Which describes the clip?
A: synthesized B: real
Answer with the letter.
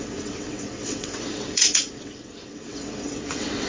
A